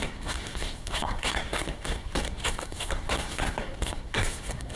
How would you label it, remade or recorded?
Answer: remade